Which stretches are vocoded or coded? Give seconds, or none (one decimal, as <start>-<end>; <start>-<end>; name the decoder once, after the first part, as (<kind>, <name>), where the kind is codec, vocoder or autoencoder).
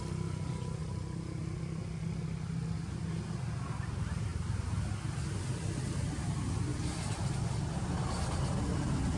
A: 6.7-7.4 (vocoder, BigVGAN v2)